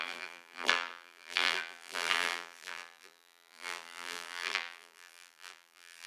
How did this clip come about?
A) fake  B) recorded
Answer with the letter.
A